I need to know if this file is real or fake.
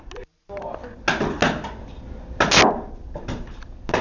real